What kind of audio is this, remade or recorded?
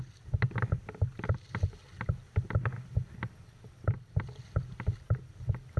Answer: recorded